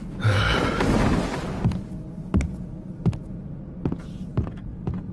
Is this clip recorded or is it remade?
recorded